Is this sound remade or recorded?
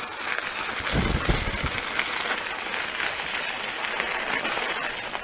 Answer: recorded